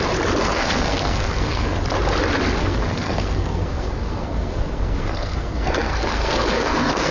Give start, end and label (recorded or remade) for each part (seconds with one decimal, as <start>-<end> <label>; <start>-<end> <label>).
0.0-0.4 recorded; 0.4-1.8 remade; 1.8-2.6 recorded; 2.6-7.1 remade